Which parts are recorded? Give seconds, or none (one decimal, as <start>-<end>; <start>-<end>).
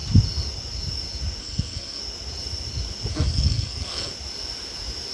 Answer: 0.0-1.4; 2.0-3.1; 4.1-5.1